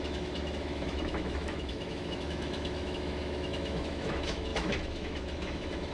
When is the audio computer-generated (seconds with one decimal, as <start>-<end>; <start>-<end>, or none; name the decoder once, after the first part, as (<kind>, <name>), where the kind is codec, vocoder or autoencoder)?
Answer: 0.0-5.9 (autoencoder, DAC-VAE)